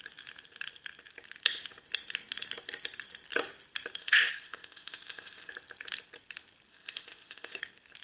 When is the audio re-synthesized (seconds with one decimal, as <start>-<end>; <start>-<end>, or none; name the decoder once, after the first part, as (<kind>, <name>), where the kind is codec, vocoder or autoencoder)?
4.0-5.5 (codec, ZipCodec); 6.7-7.6